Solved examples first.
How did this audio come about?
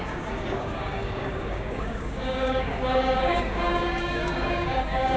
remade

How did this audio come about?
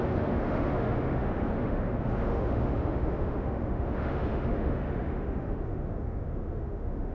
remade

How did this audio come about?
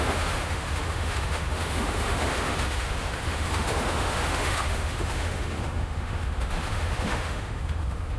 remade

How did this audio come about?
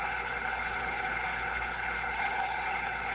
remade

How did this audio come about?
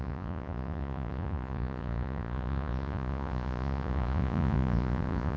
remade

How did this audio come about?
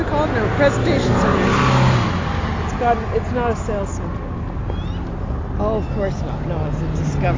recorded